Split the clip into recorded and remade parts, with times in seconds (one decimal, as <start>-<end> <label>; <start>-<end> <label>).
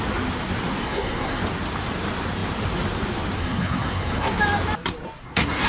0.0-0.8 recorded; 0.8-1.4 remade; 1.4-3.4 recorded; 3.4-4.3 remade; 4.3-5.2 recorded; 5.2-5.7 remade